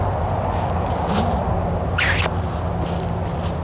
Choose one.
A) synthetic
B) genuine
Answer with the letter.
B